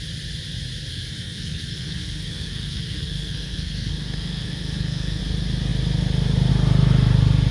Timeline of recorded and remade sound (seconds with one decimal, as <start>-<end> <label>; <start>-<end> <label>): 0.0-0.9 recorded; 0.9-5.2 remade; 5.2-7.5 recorded

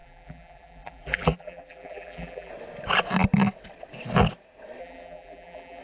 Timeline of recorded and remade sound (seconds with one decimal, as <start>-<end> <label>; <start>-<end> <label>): 0.0-2.5 remade; 2.5-4.8 recorded; 4.8-5.8 remade

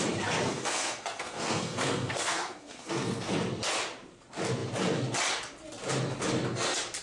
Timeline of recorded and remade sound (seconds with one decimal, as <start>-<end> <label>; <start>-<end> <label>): 0.0-0.5 recorded; 0.5-3.3 remade; 3.3-7.0 recorded

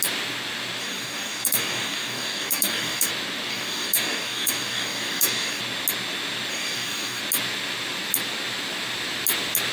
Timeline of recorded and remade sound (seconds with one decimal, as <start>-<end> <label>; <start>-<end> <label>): 0.0-0.8 recorded; 0.8-3.1 remade; 3.1-3.5 recorded; 3.5-5.6 remade; 5.6-6.5 recorded; 6.5-7.2 remade; 7.2-9.7 recorded

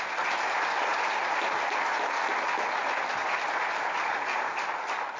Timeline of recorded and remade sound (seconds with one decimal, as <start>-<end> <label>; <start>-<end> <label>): 0.0-5.2 recorded

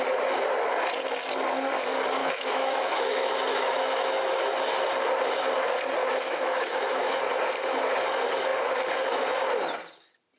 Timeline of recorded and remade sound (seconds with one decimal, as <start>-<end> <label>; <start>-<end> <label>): 0.0-2.2 recorded; 2.2-4.4 remade; 4.4-6.0 recorded; 6.0-7.2 remade; 7.2-10.4 recorded

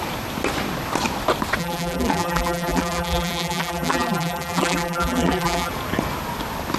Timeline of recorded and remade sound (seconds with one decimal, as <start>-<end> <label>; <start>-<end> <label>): 0.0-1.6 recorded; 1.6-5.7 remade; 5.7-6.8 recorded